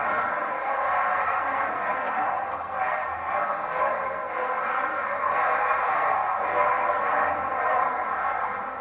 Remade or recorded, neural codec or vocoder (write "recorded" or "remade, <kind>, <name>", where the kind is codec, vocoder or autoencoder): remade, codec, SNAC